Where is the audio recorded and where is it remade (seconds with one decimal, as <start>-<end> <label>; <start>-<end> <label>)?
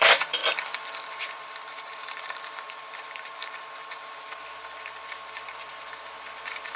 0.0-0.4 remade; 0.4-1.1 recorded; 1.1-6.8 remade